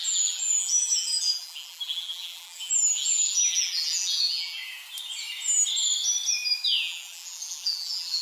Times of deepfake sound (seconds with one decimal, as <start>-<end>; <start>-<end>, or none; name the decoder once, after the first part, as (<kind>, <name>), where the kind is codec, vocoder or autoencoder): 0.0-4.6 (vocoder, BigVGAN v2); 6.8-8.2